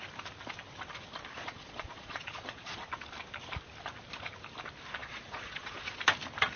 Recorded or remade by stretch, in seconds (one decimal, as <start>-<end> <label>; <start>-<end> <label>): 0.0-1.4 recorded; 1.4-2.9 remade; 2.9-5.0 recorded; 5.0-6.0 remade; 6.0-6.6 recorded